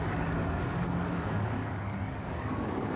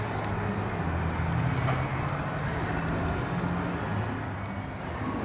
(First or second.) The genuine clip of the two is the second